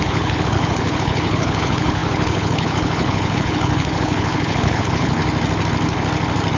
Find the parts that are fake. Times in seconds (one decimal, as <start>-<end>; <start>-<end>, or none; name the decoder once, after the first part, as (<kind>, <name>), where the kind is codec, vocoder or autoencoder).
0.0-5.2 (codec, HILCodec)